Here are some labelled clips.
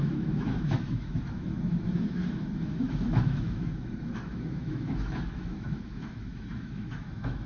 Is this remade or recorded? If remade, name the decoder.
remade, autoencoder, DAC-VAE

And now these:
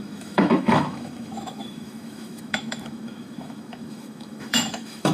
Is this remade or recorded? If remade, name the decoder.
remade, autoencoder, DAC-VAE